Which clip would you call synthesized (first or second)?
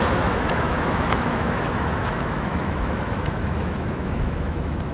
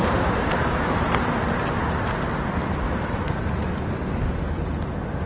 first